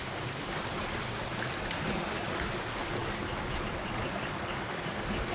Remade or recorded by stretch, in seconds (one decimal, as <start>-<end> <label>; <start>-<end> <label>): 0.0-5.3 recorded

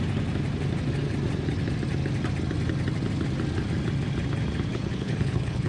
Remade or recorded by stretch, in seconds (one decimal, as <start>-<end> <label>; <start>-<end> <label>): 0.0-4.7 recorded; 4.7-5.7 remade

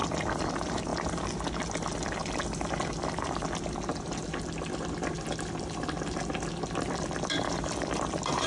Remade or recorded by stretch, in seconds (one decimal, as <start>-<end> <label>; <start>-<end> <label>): 0.0-0.9 remade; 0.9-5.1 recorded; 5.1-8.5 remade

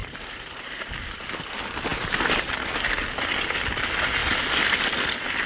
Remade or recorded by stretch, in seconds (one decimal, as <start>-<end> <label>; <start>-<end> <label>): 0.0-0.7 remade; 0.7-5.5 recorded

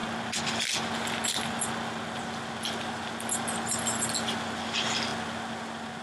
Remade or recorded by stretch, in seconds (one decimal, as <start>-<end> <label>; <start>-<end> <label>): 0.0-6.0 recorded

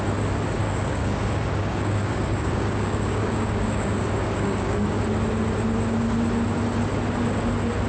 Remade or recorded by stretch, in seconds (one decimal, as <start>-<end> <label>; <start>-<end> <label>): 0.0-0.6 recorded; 0.6-5.0 remade; 5.0-7.9 recorded

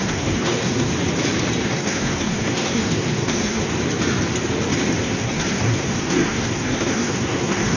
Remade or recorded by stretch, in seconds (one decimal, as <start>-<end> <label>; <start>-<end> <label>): 0.0-0.9 remade; 0.9-1.6 recorded; 1.6-3.7 remade; 3.7-5.0 recorded; 5.0-7.8 remade